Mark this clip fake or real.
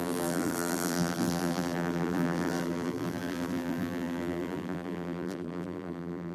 fake